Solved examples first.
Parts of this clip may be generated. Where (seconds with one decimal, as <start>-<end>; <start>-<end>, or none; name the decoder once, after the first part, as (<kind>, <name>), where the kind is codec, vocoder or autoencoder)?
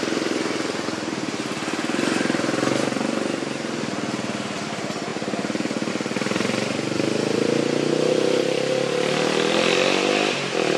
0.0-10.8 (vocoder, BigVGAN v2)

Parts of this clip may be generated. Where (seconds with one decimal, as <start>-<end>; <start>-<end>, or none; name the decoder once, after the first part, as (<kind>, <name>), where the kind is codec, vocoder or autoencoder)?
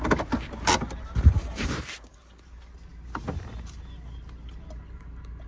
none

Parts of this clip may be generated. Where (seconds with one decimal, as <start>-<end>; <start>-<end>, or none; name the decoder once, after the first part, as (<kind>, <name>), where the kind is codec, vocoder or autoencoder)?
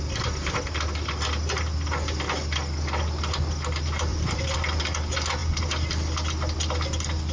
4.1-4.8 (vocoder, BigVGAN v2)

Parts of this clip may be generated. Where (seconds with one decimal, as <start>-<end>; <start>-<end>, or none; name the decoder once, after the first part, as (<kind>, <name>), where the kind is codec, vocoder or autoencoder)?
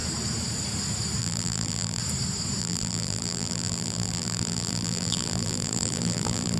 1.2-2.0 (vocoder, BigVGAN v2); 2.6-6.6